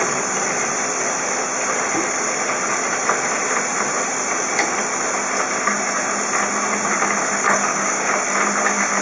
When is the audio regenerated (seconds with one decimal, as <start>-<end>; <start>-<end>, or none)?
7.7-8.2